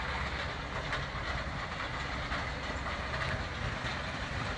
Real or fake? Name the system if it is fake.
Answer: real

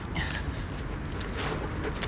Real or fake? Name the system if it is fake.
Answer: real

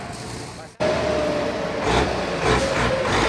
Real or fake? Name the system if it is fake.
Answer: real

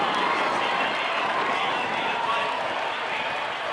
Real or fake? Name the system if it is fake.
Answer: real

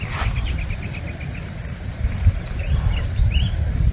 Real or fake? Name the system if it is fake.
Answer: fake, vocoder, BigVGAN v2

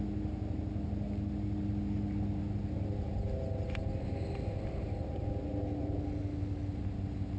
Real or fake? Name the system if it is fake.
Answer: real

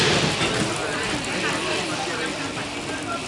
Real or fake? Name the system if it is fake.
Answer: real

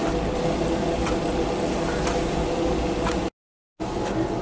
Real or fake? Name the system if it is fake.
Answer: real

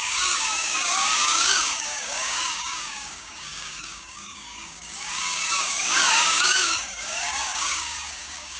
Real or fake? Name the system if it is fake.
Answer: fake, codec, DAC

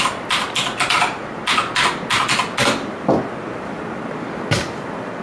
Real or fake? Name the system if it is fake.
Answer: real